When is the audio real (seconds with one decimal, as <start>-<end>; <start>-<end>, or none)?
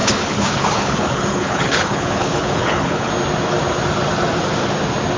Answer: 3.1-5.2